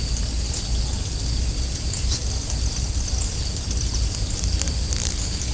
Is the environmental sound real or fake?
real